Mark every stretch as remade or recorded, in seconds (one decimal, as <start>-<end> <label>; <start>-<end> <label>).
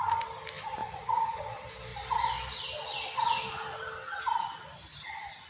0.0-0.8 recorded; 0.8-1.4 remade; 1.4-5.5 recorded